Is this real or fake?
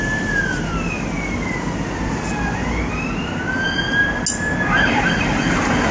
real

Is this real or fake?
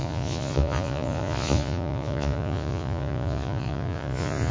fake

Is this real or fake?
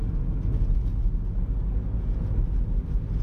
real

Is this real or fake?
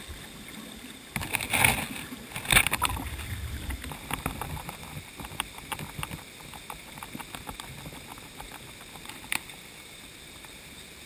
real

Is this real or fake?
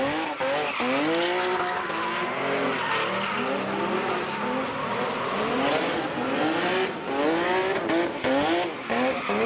real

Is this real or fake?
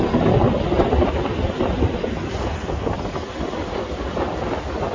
real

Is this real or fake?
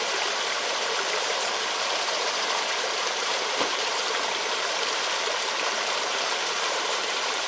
fake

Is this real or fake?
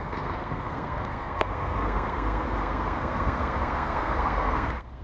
fake